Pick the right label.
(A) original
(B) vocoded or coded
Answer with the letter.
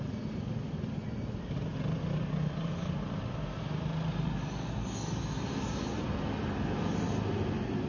A